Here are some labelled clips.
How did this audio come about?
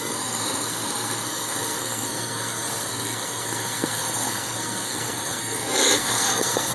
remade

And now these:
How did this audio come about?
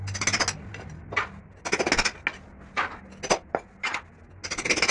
recorded